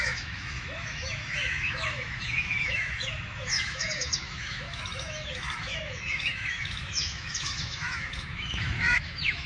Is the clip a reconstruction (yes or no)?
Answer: yes